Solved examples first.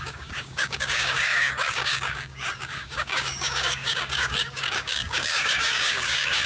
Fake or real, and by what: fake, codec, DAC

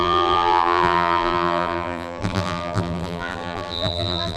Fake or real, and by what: fake, vocoder, BigVGAN v2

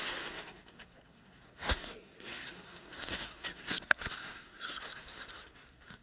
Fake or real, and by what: fake, codec, SNAC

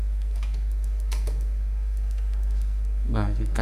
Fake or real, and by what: fake, codec, SNAC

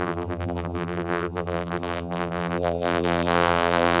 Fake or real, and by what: fake, vocoder, BigVGAN v2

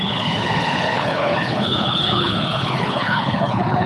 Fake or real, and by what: fake, codec, HILCodec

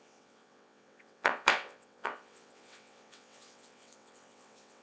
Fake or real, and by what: fake, vocoder, WaveNeXt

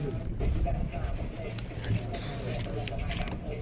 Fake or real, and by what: real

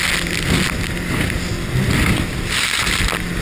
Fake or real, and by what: real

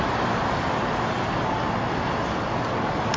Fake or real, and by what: real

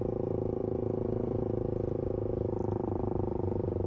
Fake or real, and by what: fake, vocoder, BigVGAN v2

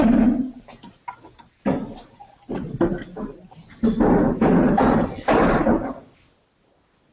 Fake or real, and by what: real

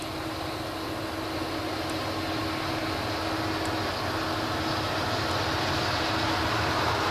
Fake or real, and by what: real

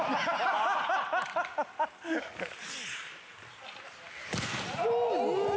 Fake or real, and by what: real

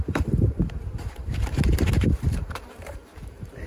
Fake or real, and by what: fake, vocoder, BigVGAN v2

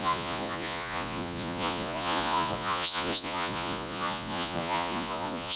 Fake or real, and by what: fake, vocoder, Vocos